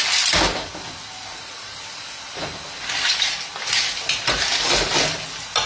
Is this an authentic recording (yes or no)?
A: yes